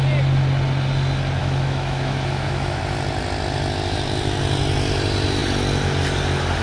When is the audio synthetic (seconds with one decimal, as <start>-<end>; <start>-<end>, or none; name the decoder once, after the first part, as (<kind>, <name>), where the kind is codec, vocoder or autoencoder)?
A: 1.4-2.8 (autoencoder, DAC-VAE)